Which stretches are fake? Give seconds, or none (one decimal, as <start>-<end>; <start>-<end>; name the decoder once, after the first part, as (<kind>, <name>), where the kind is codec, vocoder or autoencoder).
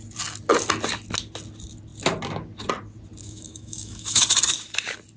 3.2-4.2 (autoencoder, DAC-VAE)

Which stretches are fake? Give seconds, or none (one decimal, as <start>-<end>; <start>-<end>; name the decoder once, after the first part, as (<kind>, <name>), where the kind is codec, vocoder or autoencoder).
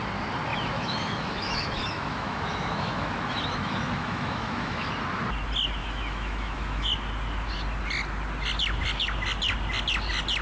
0.5-4.9 (autoencoder, DAC-VAE); 5.8-6.9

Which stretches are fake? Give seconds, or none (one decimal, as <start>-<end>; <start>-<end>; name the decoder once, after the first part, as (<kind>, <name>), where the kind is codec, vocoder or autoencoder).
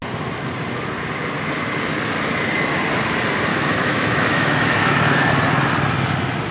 3.5-5.3 (autoencoder, DAC-VAE)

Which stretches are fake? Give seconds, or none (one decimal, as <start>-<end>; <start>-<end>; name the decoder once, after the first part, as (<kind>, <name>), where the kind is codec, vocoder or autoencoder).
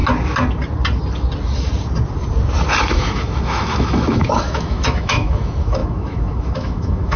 2.8-7.2 (autoencoder, DAC-VAE)